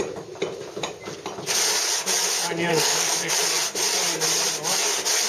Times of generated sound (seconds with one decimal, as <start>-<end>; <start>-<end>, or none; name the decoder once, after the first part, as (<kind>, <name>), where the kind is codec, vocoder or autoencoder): 2.7-3.3 (codec, SNAC)